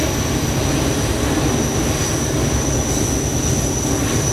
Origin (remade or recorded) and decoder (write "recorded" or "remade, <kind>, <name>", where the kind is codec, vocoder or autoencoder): recorded